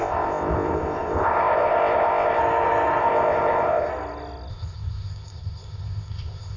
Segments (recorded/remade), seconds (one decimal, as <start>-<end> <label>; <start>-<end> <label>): 0.0-2.4 remade; 2.4-3.0 recorded; 3.0-3.9 remade; 3.9-4.5 recorded; 4.5-6.6 remade